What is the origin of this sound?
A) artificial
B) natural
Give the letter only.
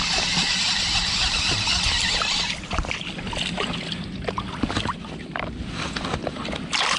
B